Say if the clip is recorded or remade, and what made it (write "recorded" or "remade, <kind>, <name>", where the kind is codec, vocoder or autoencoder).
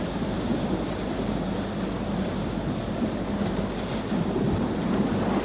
recorded